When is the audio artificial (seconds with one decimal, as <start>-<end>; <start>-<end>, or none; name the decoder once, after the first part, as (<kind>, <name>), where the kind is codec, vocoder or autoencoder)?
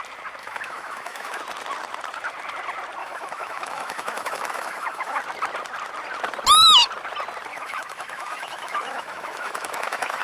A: 0.4-1.4 (autoencoder, DAC-VAE); 3.0-5.2; 7.5-10.2